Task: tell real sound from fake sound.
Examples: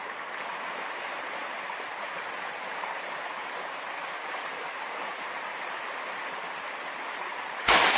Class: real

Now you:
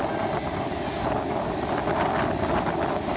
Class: real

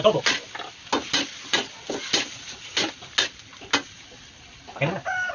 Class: real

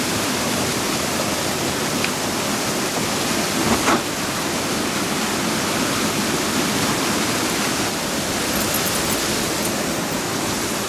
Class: real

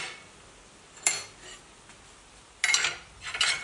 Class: real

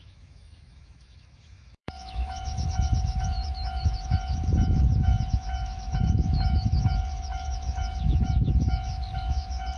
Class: fake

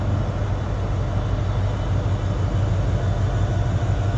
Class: real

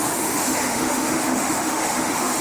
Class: fake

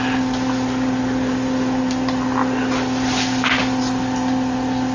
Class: real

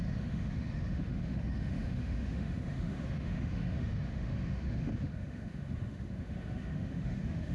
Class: fake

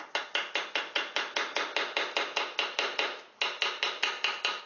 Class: real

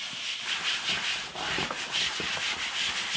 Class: real